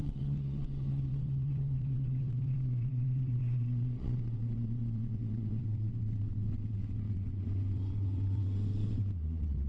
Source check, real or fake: fake